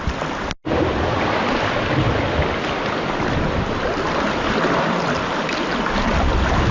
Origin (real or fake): real